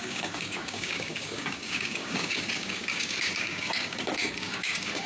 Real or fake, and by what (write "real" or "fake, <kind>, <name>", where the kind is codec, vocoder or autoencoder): fake, codec, DAC